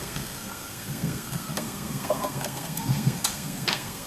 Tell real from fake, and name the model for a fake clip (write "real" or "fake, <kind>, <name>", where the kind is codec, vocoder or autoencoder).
fake, codec, SNAC